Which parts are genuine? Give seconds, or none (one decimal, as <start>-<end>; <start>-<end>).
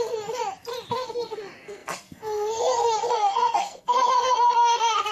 0.4-0.9